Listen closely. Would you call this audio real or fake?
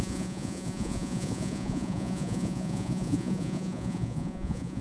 fake